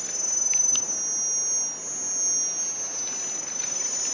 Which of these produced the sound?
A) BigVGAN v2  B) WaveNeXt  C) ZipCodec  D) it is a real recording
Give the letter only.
D